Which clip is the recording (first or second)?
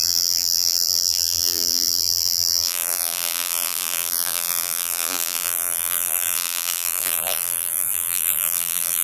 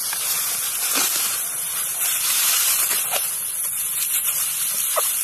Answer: second